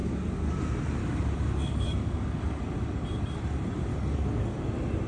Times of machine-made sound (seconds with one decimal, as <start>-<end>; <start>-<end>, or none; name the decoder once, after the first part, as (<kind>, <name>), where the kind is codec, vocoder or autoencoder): 0.0-0.6 (codec, DAC); 1.0-2.6; 3.9-4.6